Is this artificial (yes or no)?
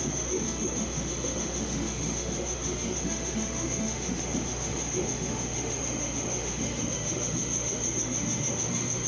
yes